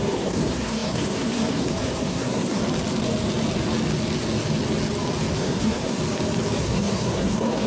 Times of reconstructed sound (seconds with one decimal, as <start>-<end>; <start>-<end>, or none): 0.0-2.6; 5.4-6.0; 6.6-7.7

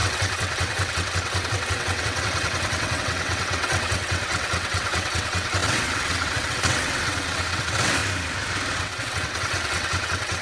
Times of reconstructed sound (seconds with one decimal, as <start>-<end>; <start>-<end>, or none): 0.0-8.0; 8.8-10.4